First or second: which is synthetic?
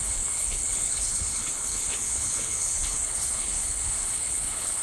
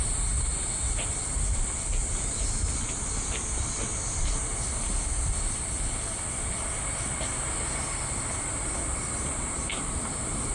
first